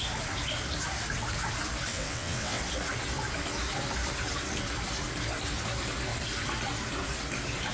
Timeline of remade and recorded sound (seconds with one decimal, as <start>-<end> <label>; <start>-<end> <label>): 0.0-1.9 recorded; 1.9-2.6 remade; 2.6-7.7 recorded